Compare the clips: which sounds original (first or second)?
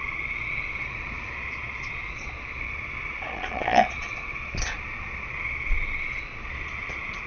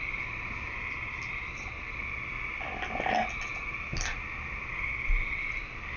second